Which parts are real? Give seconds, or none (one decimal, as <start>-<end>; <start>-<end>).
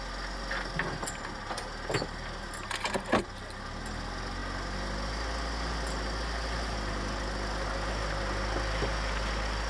0.0-9.7